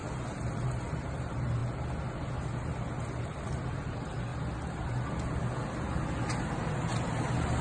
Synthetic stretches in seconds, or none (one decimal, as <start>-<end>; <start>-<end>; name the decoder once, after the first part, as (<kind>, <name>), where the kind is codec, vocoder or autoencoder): 0.0-1.6 (vocoder, BigVGAN v2); 3.2-4.3; 6.6-7.6